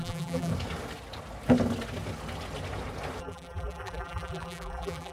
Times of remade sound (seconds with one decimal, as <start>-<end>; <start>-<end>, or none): 0.0-0.5; 3.2-5.1